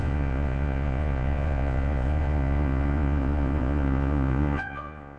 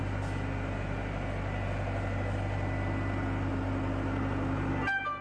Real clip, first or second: second